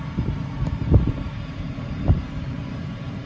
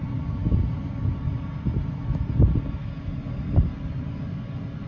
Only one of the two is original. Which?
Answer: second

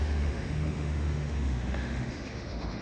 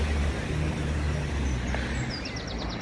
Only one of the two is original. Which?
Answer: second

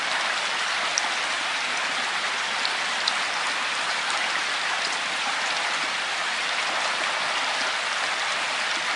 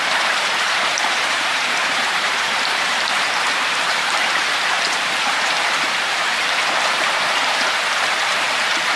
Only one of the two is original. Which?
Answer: first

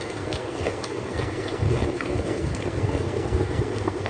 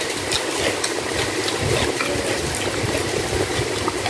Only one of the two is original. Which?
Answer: second